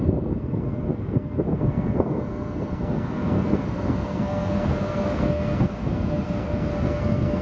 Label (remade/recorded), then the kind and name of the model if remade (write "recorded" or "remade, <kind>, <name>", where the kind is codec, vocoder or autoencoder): remade, codec, SNAC